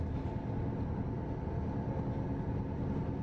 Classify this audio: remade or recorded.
recorded